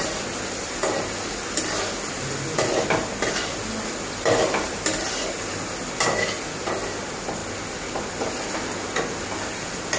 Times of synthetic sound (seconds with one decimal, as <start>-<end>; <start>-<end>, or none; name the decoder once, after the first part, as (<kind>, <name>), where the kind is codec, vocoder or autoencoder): none